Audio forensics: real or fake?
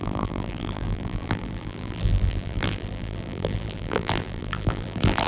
fake